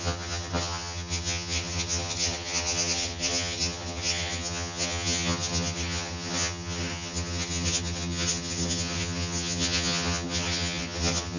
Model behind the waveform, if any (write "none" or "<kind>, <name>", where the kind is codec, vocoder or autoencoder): vocoder, HiFi-GAN